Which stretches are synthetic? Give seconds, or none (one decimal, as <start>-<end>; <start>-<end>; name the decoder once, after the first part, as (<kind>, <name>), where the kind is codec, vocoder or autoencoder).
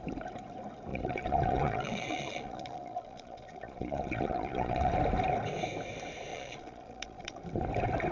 0.9-4.9 (vocoder, Vocos); 6.3-7.4